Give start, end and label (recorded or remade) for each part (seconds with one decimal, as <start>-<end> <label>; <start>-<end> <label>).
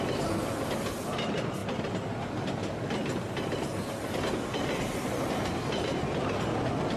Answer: 0.0-7.0 recorded